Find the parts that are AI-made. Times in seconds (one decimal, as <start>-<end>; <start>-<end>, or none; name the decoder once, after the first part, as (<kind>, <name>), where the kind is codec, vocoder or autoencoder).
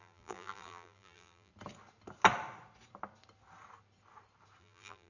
0.0-1.5 (vocoder, BigVGAN v2); 4.6-5.1